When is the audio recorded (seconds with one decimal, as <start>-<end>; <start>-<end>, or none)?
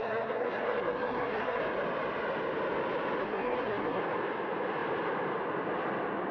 1.6-3.2; 4.0-6.3